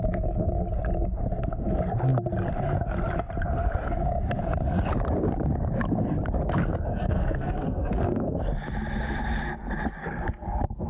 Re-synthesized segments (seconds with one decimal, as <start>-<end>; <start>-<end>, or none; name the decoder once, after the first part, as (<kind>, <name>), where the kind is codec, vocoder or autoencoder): 6.7-8.4 (codec, SNAC)